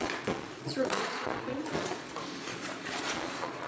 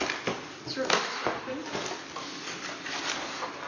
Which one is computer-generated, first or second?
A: first